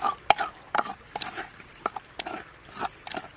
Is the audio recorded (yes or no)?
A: yes